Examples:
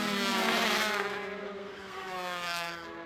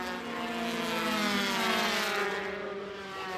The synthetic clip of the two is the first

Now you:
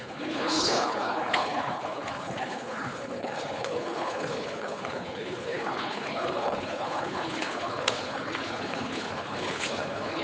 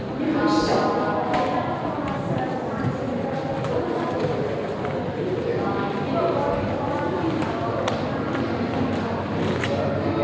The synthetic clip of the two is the first